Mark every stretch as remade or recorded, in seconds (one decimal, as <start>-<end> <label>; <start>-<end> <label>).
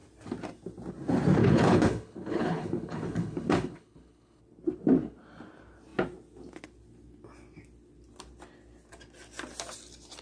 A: 0.0-1.4 recorded; 1.4-4.4 remade; 4.4-10.2 recorded